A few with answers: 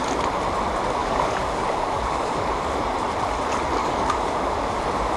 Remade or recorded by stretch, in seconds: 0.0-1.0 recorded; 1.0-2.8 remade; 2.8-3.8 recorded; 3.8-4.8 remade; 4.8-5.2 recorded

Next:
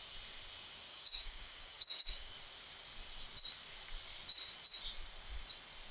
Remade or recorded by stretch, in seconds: 0.0-0.9 recorded; 0.9-2.3 remade; 2.3-5.9 recorded

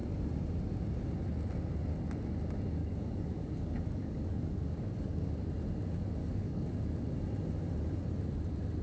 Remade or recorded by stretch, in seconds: 0.0-2.8 recorded; 2.8-5.4 remade; 5.4-6.2 recorded; 6.2-6.7 remade; 6.7-8.8 recorded

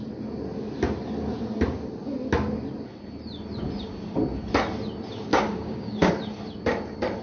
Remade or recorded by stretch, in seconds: 0.0-5.3 recorded; 5.3-6.1 remade; 6.1-7.2 recorded

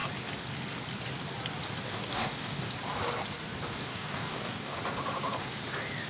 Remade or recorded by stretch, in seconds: 0.0-1.9 recorded; 1.9-2.7 remade; 2.7-3.9 recorded; 3.9-4.8 remade; 4.8-6.1 recorded

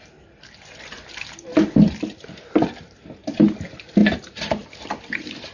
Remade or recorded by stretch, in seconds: 0.0-5.5 recorded